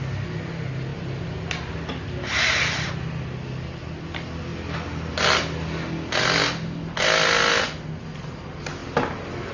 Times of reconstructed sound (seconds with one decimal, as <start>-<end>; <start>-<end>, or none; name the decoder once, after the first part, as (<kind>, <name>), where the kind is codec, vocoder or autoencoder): none